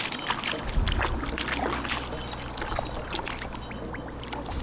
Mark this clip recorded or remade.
recorded